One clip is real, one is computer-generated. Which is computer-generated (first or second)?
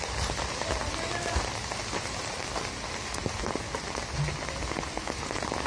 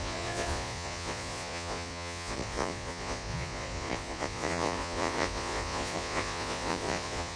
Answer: second